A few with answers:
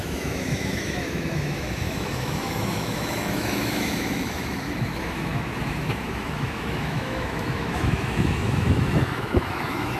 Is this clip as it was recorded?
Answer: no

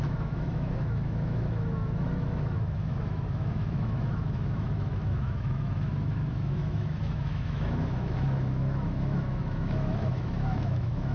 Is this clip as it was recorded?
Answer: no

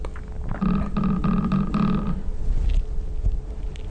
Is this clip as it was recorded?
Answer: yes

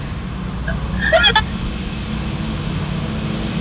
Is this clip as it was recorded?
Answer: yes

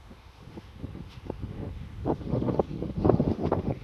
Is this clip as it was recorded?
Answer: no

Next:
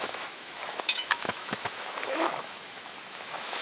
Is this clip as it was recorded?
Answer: no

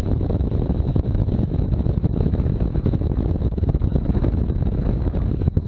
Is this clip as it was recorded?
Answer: no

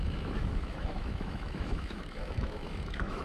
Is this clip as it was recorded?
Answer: no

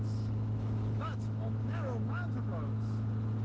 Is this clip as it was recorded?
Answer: no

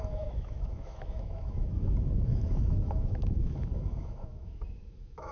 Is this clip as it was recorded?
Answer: no